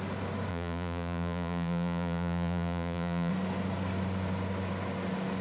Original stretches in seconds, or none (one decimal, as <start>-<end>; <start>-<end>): 0.0-0.5; 3.3-5.4